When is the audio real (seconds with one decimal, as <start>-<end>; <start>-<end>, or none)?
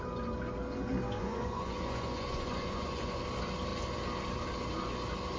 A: 0.0-1.2; 3.2-5.4